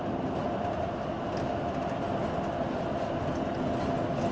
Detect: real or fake real